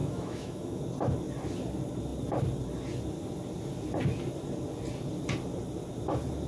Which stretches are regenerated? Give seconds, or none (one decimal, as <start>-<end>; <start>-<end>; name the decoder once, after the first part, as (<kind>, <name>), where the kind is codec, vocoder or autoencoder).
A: 0.0-0.8 (autoencoder, DAC-VAE)